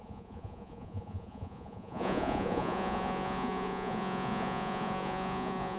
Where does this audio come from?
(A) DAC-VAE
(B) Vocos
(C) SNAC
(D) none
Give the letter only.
B